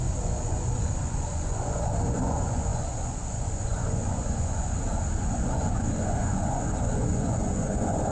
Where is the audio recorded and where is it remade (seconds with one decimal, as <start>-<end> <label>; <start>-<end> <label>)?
0.0-8.1 remade